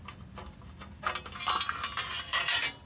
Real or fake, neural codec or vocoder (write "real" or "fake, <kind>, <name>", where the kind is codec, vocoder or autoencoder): real